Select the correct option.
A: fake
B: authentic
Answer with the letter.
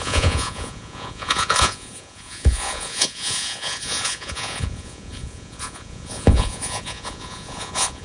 A